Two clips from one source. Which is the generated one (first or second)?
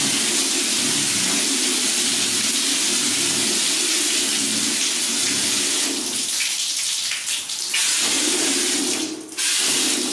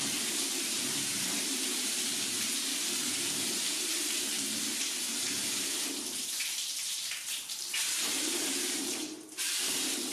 second